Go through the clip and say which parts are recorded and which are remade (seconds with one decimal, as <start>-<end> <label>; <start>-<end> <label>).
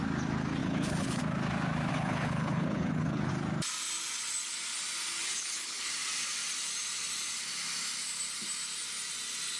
0.0-0.6 recorded; 0.6-1.2 remade; 1.2-1.9 recorded; 1.9-3.3 remade; 3.3-5.2 recorded; 5.2-5.9 remade; 5.9-9.6 recorded